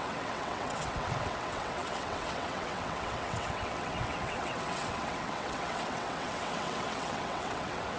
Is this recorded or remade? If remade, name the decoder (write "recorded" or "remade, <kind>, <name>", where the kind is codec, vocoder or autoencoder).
remade, vocoder, WaveNeXt